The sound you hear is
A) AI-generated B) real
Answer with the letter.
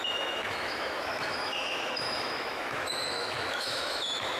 A